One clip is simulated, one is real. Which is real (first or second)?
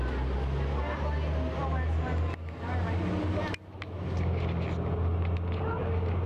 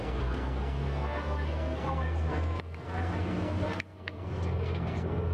first